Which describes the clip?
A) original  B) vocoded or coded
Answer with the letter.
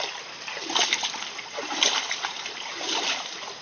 A